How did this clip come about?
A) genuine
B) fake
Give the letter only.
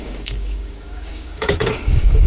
B